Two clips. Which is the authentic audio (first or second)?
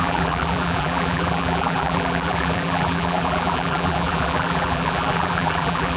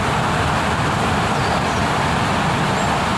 second